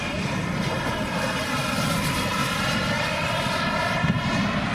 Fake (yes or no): no